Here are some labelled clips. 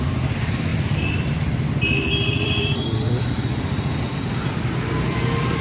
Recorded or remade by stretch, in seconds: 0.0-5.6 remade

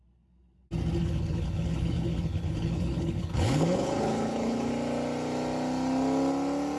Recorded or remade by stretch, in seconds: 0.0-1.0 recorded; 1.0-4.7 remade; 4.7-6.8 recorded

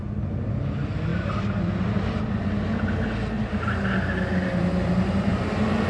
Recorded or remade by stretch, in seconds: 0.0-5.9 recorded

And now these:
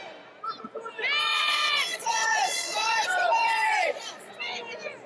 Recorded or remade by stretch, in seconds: 0.0-1.2 recorded; 1.2-4.3 remade; 4.3-5.1 recorded

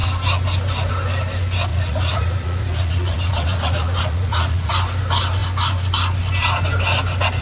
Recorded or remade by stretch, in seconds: 0.0-1.7 recorded; 1.7-4.7 remade; 4.7-7.4 recorded